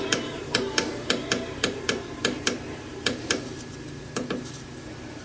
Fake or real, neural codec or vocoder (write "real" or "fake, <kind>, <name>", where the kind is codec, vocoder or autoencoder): fake, vocoder, BigVGAN v2